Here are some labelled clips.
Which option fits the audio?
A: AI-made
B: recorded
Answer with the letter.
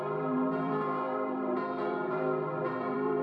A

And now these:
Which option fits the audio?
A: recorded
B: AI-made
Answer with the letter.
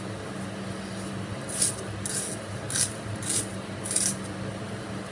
A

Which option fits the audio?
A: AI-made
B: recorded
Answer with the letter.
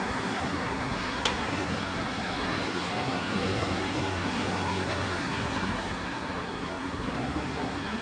A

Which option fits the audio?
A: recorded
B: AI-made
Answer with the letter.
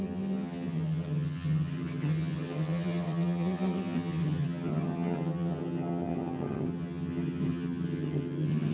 B